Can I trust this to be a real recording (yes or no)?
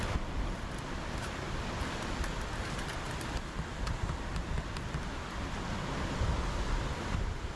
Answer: yes